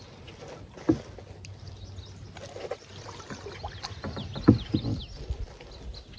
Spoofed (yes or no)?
no